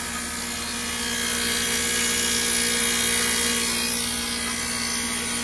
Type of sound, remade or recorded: recorded